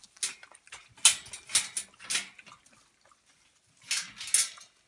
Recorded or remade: recorded